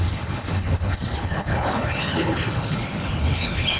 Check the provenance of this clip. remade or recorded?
remade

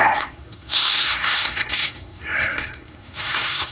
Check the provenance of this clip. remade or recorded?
remade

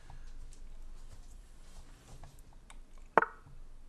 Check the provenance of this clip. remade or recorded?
recorded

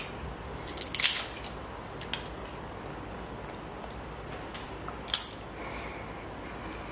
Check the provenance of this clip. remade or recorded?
recorded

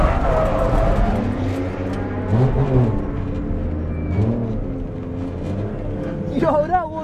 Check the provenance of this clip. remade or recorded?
recorded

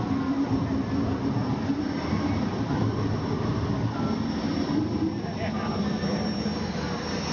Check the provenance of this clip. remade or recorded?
recorded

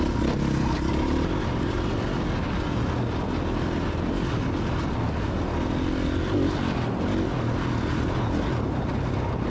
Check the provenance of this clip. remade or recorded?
recorded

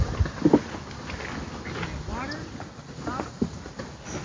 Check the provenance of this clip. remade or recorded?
recorded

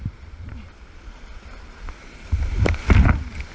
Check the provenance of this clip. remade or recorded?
recorded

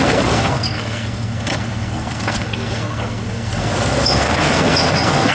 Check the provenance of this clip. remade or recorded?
remade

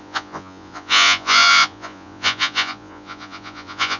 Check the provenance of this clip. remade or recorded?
remade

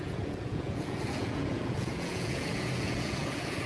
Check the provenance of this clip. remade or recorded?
remade